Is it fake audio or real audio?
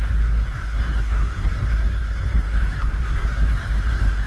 fake